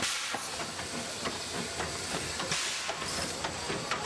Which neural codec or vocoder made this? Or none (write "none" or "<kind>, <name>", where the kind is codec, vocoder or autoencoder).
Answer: none